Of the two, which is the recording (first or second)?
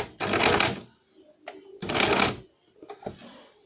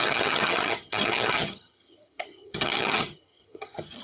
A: first